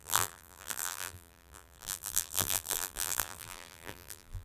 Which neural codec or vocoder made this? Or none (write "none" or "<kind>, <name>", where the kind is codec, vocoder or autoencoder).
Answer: vocoder, BigVGAN v2